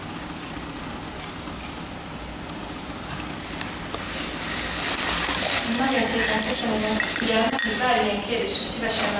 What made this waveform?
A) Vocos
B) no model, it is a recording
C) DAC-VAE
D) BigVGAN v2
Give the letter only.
B